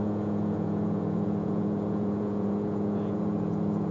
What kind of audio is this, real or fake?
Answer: fake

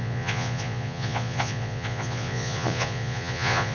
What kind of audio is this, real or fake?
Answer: fake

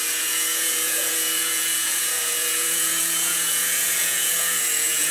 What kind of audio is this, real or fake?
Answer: fake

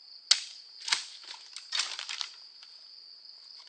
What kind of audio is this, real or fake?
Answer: real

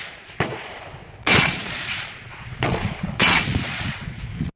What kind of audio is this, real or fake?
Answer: fake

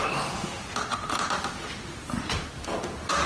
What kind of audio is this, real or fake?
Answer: real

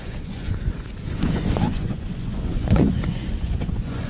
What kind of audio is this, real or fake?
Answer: fake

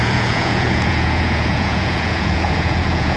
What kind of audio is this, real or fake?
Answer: fake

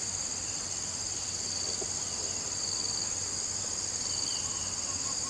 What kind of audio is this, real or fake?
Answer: real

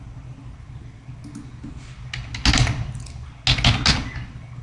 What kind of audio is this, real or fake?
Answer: real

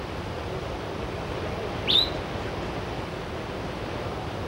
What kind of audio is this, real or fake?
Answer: real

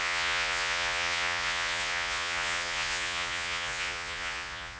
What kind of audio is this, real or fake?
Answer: fake